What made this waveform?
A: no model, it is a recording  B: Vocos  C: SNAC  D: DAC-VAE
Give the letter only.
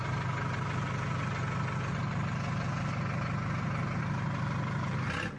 A